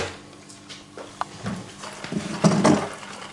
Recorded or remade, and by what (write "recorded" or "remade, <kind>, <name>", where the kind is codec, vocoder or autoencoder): recorded